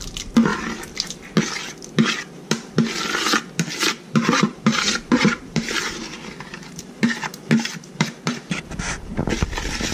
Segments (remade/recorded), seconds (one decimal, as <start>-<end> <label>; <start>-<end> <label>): 0.0-4.5 recorded; 4.5-6.0 remade; 6.0-6.5 recorded; 6.5-9.3 remade; 9.3-9.9 recorded